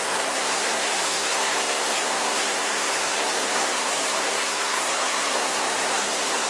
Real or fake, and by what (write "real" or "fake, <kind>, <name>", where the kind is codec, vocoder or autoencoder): fake, codec, SNAC